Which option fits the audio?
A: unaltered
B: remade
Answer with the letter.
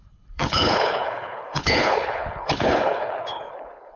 B